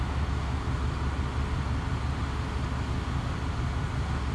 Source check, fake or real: real